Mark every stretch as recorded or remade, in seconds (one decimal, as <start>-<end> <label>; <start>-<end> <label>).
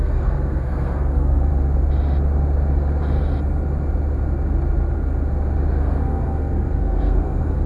0.0-1.5 remade; 1.5-5.8 recorded; 5.8-7.7 remade